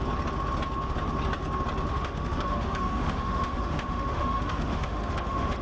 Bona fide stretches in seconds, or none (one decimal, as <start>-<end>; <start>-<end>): 0.0-1.9